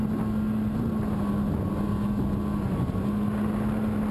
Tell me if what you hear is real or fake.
real